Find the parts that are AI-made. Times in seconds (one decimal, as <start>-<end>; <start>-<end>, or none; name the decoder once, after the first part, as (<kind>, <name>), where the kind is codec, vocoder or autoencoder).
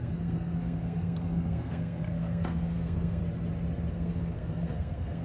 0.0-3.2 (codec, SNAC); 3.9-5.2